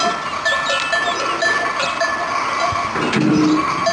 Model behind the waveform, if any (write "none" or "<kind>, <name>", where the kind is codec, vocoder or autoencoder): none